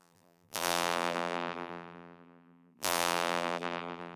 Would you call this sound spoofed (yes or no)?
yes